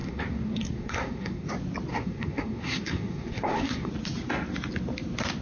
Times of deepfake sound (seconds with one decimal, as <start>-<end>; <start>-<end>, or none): 0.0-1.5; 1.9-3.9

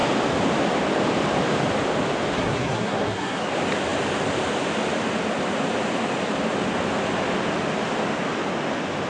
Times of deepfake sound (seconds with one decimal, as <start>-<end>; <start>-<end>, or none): 2.3-3.5

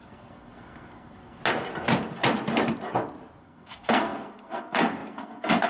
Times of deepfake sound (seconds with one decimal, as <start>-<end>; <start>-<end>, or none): 0.0-1.4; 3.4-5.7

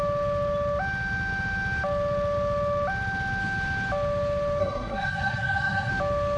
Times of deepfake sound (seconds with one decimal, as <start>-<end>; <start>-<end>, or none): 4.6-5.9

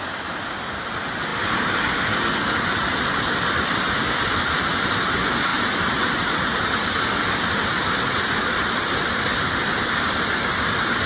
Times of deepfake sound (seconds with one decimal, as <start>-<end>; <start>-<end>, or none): none

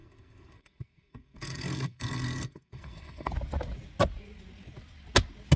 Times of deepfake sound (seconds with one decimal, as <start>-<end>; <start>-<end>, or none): 0.0-3.3

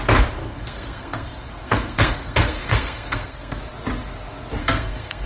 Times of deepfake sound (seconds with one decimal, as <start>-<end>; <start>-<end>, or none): 0.4-3.6; 4.6-5.3

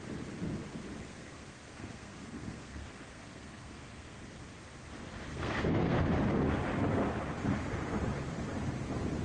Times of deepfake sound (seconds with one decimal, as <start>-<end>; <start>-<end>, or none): 1.0-4.2; 5.3-6.0